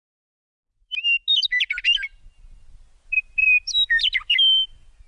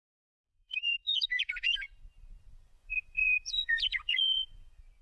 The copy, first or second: second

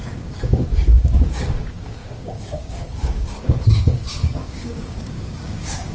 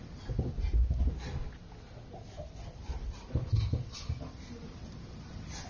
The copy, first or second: first